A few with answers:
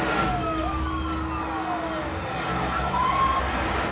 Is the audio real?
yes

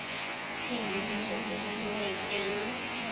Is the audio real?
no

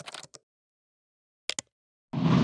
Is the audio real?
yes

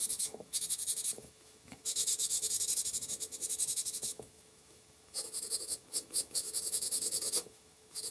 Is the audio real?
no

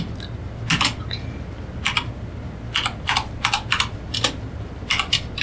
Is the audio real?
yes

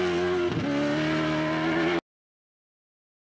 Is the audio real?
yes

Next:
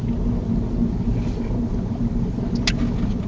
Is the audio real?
yes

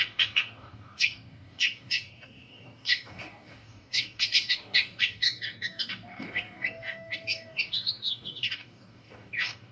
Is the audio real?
no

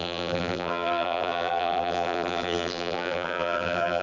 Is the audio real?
no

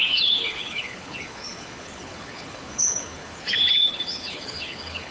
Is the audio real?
no